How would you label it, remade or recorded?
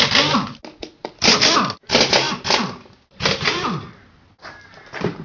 recorded